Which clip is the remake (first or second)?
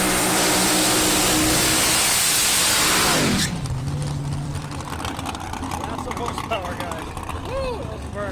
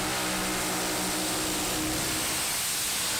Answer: first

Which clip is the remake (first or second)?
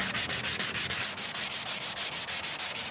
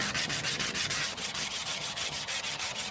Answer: second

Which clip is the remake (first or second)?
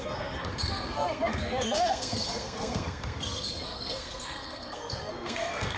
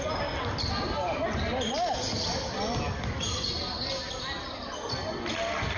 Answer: first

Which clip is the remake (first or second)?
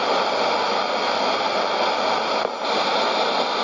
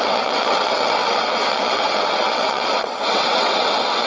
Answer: second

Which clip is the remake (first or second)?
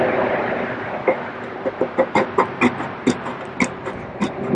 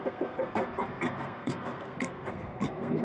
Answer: second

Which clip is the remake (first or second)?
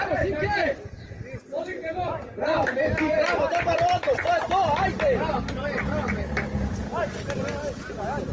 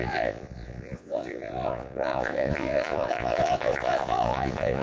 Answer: second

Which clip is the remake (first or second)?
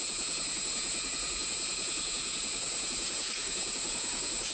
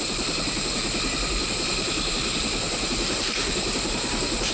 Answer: first